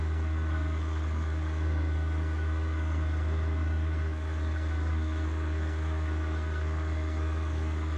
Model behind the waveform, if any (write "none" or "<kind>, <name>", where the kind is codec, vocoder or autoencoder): codec, SNAC